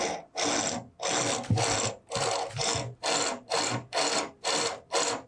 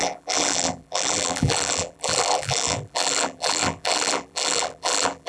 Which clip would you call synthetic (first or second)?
second